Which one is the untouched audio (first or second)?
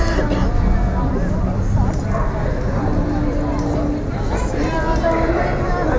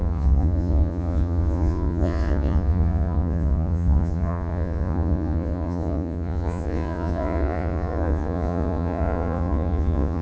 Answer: first